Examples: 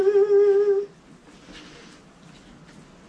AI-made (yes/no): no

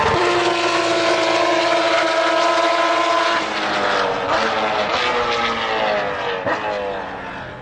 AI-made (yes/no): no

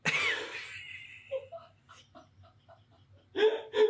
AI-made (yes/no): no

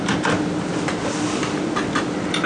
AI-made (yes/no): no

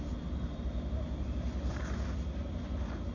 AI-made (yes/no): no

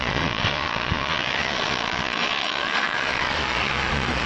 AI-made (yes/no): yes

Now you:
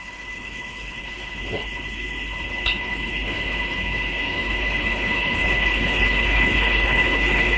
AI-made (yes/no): yes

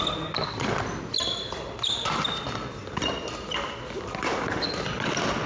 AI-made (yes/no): no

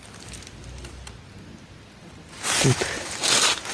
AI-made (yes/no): no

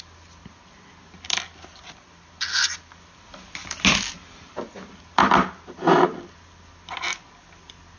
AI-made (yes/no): no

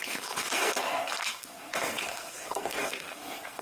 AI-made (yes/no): yes